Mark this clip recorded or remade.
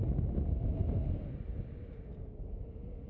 recorded